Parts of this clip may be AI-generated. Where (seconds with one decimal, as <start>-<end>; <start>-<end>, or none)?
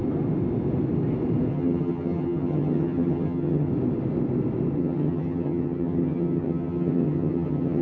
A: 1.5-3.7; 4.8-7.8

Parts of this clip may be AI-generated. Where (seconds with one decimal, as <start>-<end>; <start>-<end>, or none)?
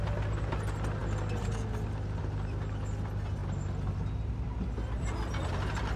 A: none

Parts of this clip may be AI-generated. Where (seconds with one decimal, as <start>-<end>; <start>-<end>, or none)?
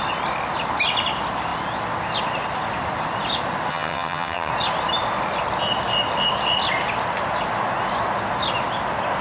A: 3.7-4.5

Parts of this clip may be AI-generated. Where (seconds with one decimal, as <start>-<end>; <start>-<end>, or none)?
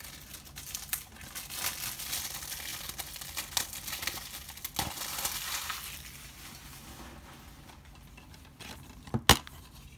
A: none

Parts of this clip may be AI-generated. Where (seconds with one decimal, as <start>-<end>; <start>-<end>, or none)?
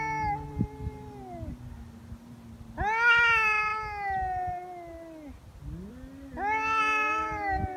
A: none